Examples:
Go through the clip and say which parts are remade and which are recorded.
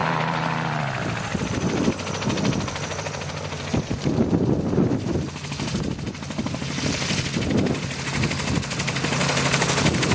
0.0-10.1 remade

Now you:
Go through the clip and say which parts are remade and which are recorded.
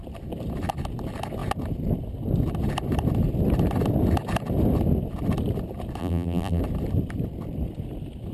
0.0-6.0 recorded; 6.0-6.6 remade; 6.6-8.3 recorded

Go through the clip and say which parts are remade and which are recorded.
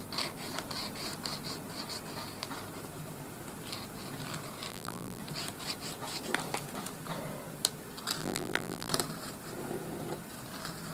0.0-4.7 recorded; 4.7-5.2 remade; 5.2-8.2 recorded; 8.2-8.9 remade; 8.9-10.9 recorded